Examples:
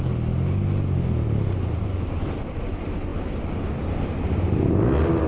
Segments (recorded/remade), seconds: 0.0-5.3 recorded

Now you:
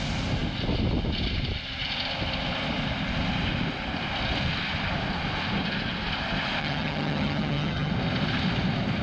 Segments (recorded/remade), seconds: 0.0-6.6 recorded; 6.6-7.9 remade; 7.9-9.0 recorded

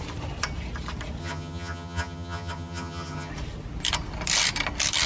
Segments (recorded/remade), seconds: 0.0-1.2 recorded; 1.2-3.3 remade; 3.3-5.1 recorded

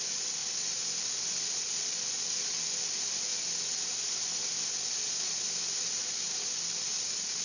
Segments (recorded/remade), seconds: 0.0-7.4 recorded